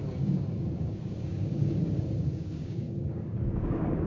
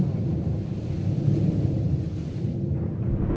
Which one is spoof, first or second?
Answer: first